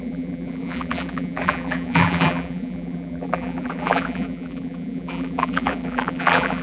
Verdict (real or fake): fake